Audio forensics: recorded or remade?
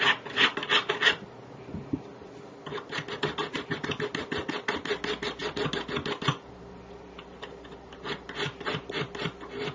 recorded